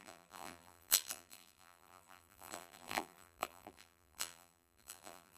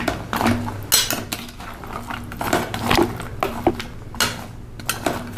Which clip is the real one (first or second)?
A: second